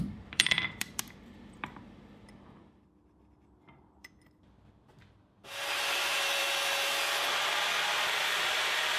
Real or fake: fake